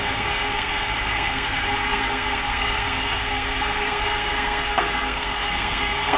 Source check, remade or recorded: remade